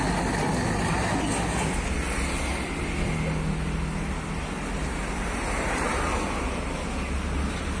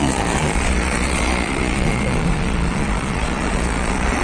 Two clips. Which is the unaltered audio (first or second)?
first